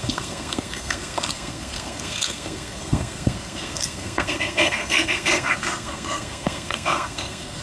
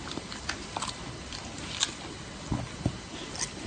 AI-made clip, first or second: first